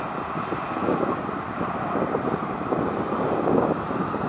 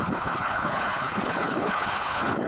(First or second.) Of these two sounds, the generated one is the second